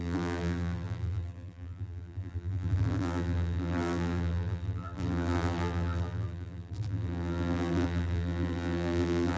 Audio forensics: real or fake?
fake